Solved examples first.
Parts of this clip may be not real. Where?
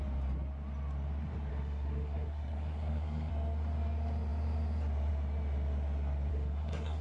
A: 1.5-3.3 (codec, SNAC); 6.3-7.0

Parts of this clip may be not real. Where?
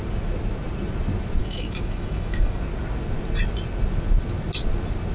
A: 1.4-2.6 (autoencoder, DAC-VAE)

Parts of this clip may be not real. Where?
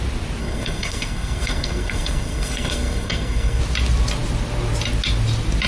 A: 0.4-3.6 (codec, SNAC)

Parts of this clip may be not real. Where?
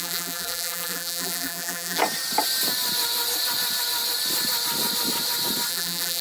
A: 0.0-2.0 (vocoder, BigVGAN v2); 5.7-6.2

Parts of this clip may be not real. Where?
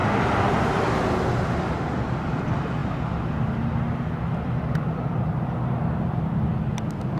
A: none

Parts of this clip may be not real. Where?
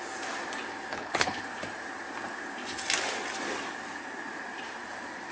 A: 0.9-1.4 (codec, HILCodec)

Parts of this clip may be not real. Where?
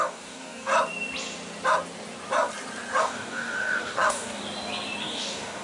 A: 0.0-0.7 (codec, DAC); 3.0-4.4; 5.0-5.6